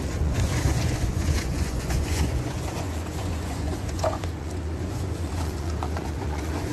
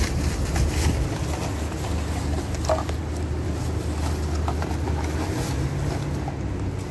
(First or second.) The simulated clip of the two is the first